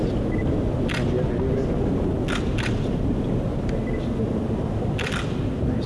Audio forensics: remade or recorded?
recorded